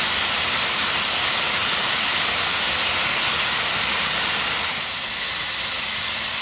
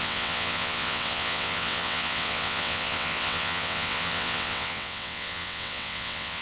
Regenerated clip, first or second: second